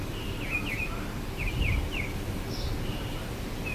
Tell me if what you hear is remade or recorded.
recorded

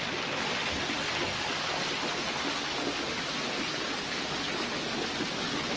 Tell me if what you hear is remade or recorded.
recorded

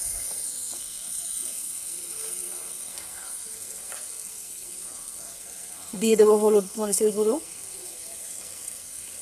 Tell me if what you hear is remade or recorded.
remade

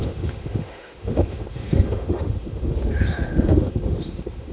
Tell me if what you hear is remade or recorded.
remade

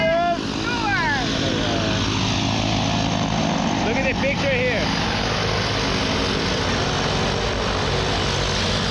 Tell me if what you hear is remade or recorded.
recorded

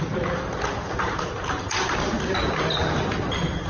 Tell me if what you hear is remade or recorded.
recorded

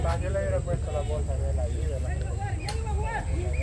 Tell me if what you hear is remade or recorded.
recorded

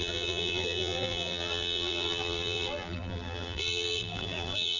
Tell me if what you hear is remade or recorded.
remade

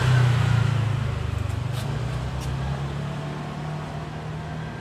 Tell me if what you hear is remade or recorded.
recorded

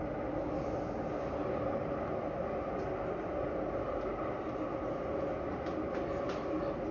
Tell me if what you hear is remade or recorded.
recorded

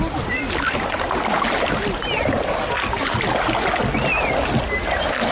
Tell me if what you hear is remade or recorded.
recorded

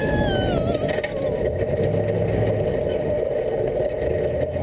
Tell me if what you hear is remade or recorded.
recorded